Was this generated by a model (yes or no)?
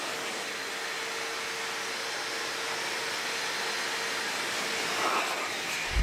no